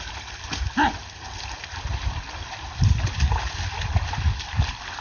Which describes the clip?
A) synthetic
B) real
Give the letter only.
A